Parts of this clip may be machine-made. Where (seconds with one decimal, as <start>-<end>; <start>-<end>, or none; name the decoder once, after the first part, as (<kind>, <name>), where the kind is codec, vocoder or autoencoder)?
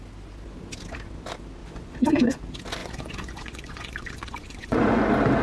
1.6-2.4 (vocoder, Vocos); 2.8-5.0